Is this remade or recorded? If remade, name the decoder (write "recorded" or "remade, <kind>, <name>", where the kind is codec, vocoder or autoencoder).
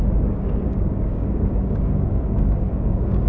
remade, codec, DAC